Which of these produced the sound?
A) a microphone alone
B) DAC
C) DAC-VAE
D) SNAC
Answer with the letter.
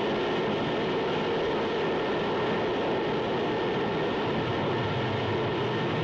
A